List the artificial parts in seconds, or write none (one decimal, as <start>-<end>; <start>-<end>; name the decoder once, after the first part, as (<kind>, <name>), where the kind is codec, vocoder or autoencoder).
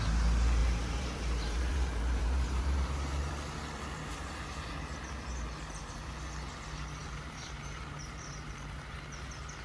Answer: 0.6-3.3 (vocoder, BigVGAN v2); 7.0-9.0